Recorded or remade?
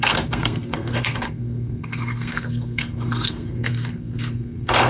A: remade